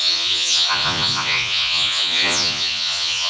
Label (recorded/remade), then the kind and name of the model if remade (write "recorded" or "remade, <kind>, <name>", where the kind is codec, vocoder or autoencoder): remade, vocoder, Vocos